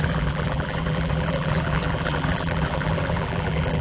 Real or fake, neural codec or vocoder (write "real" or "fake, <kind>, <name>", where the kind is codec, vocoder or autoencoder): fake, vocoder, BigVGAN v2